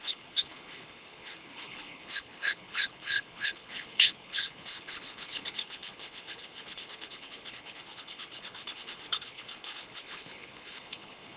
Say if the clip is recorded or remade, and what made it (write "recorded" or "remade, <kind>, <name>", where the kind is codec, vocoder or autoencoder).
remade, codec, HILCodec